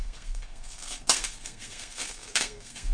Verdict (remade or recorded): remade